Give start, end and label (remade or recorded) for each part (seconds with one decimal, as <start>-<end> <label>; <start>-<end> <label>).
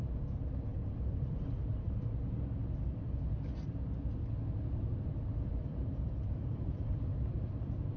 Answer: 0.0-0.7 recorded; 0.7-1.9 remade; 1.9-5.3 recorded; 5.3-7.0 remade; 7.0-8.0 recorded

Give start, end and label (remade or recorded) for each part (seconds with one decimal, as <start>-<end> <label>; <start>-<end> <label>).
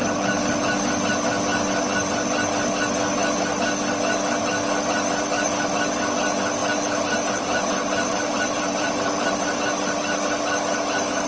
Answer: 0.0-6.6 recorded; 6.6-9.6 remade; 9.6-11.3 recorded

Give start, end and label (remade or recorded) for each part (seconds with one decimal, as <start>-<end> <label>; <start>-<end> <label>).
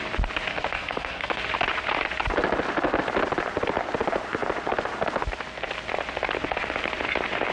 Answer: 0.0-0.5 recorded; 0.5-1.4 remade; 1.4-7.5 recorded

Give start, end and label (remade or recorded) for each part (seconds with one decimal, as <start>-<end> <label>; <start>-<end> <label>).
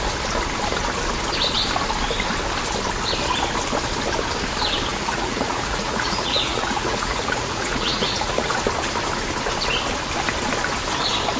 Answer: 0.0-4.9 recorded; 4.9-8.6 remade; 8.6-11.4 recorded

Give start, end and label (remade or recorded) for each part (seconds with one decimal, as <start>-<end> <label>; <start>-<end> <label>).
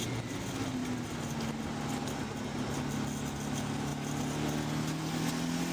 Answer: 0.0-5.7 recorded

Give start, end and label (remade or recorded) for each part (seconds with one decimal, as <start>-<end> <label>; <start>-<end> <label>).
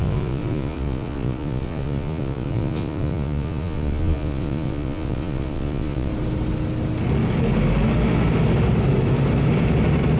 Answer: 0.0-6.1 remade; 6.1-10.2 recorded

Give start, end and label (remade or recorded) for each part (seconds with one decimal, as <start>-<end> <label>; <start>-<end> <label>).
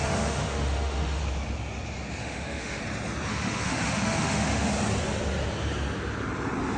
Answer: 0.0-1.2 remade; 1.2-2.2 recorded; 2.2-2.8 remade; 2.8-3.3 recorded; 3.3-4.7 remade; 4.7-6.8 recorded